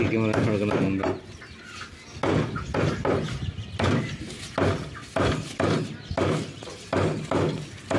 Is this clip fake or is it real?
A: real